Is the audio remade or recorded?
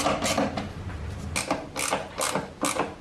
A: recorded